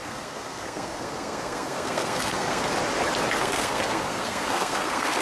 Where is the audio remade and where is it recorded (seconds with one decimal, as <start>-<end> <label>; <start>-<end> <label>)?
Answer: 0.0-2.7 remade; 2.7-3.4 recorded; 3.4-5.2 remade

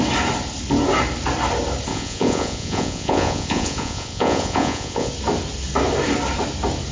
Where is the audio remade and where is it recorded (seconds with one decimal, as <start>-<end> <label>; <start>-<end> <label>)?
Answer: 0.0-1.9 recorded; 1.9-5.1 remade; 5.1-6.9 recorded

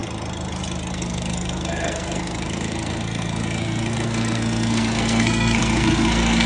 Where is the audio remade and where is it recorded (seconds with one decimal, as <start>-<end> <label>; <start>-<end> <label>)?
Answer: 0.0-0.9 recorded; 0.9-6.5 remade

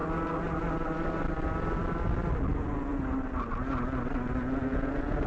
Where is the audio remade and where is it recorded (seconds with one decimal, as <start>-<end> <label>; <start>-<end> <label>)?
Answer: 0.0-5.3 recorded